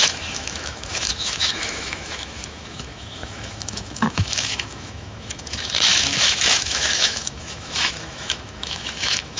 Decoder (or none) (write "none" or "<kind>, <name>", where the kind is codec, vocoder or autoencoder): autoencoder, DAC-VAE